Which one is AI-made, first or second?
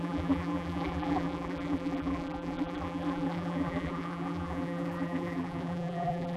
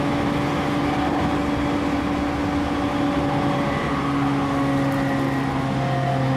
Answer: first